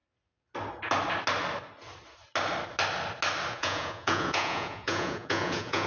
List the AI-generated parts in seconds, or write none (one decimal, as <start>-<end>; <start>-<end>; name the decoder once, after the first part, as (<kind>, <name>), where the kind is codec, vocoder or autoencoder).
3.5-5.9 (vocoder, Vocos)